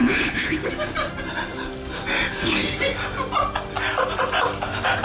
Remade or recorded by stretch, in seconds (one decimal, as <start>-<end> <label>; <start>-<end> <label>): 0.0-0.7 remade; 0.7-5.0 recorded